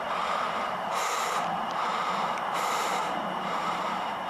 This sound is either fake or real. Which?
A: fake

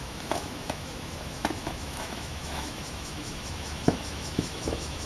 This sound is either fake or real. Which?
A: fake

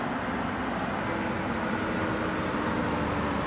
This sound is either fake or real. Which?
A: real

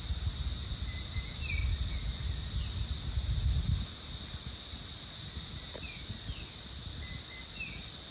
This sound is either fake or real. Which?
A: real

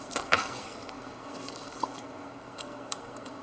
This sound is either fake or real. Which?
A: fake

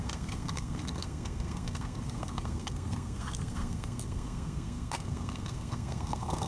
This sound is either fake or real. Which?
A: fake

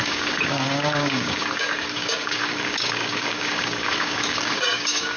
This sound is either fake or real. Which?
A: fake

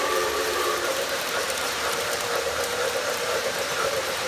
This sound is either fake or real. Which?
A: fake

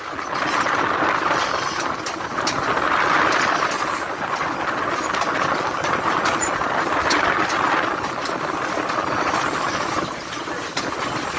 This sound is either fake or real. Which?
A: real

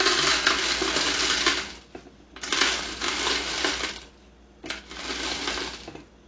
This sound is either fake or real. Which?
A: real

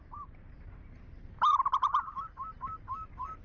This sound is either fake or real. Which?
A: fake